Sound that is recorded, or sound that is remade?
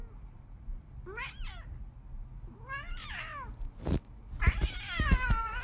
recorded